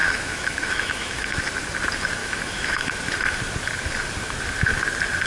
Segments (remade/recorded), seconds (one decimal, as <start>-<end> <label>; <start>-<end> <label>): 0.0-1.4 remade; 1.4-2.2 recorded; 2.2-2.9 remade; 2.9-5.3 recorded